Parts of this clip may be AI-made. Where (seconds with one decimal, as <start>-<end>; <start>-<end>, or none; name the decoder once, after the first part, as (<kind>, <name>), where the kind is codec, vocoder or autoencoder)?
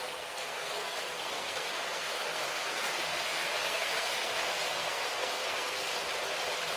0.0-5.9 (codec, SNAC)